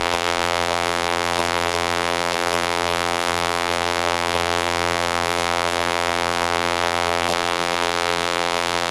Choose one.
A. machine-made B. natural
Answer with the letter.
A